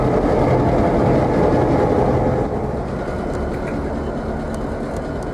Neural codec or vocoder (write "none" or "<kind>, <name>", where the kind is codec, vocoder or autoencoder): none